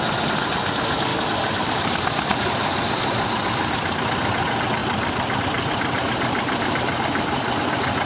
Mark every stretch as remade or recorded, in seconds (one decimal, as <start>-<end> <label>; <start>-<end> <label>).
0.0-1.1 recorded; 1.1-1.9 remade; 1.9-2.3 recorded; 2.3-3.4 remade; 3.4-8.1 recorded